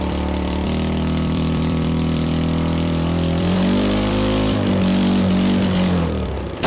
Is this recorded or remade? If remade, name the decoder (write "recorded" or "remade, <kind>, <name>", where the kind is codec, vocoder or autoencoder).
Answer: remade, vocoder, BigVGAN v2